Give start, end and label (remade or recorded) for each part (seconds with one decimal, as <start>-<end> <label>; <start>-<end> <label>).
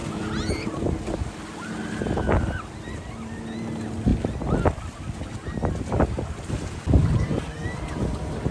0.0-8.5 recorded